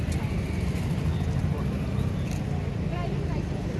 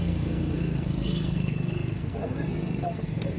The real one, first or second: first